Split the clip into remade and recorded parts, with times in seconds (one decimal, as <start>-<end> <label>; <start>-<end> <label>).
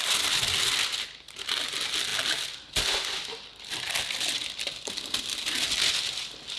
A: 0.0-6.6 recorded